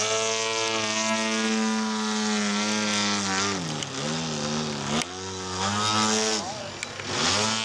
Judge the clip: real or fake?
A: real